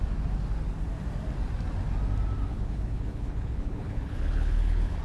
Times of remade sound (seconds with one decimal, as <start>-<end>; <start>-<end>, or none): 2.5-5.0